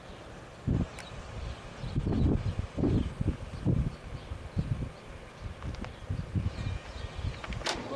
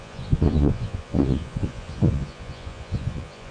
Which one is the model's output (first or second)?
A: second